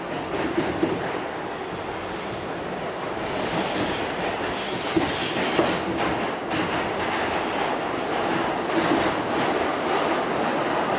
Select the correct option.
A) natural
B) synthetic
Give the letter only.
A